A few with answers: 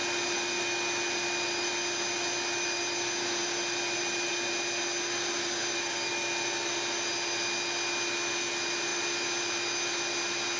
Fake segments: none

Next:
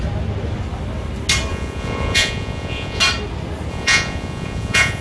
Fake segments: 1.5-3.0 (vocoder, Vocos); 3.7-5.0

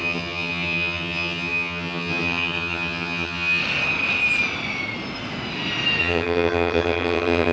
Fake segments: 0.0-3.6 (vocoder, HiFi-GAN); 6.0-7.5

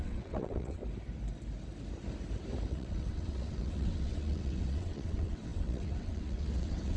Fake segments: 0.0-0.8 (vocoder, WaveNeXt); 2.7-7.0

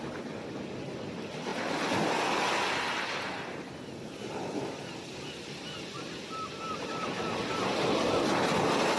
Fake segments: none

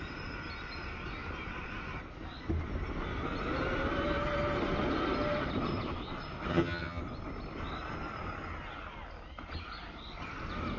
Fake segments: 6.5-7.0 (vocoder, HiFi-GAN)

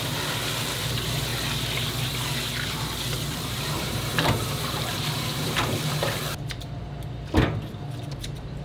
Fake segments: 3.2-6.2 (vocoder, BigVGAN v2)